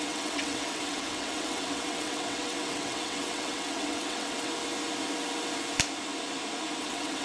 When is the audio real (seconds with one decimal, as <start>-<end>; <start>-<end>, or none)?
4.5-6.8